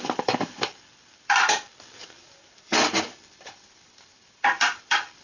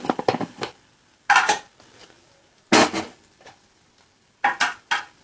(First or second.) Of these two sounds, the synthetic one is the first